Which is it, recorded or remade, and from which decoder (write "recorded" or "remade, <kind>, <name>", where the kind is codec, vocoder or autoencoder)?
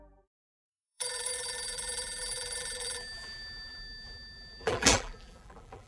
remade, vocoder, BigVGAN v2